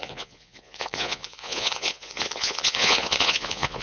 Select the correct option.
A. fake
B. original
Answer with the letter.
A